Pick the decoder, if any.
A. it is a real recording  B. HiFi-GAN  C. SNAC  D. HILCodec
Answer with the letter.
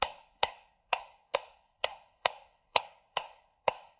C